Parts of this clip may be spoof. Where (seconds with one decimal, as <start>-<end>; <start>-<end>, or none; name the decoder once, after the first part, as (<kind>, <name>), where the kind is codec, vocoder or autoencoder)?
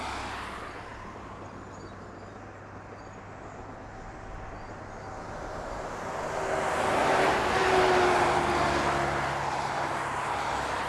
none